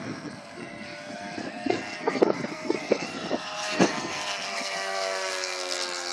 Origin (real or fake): fake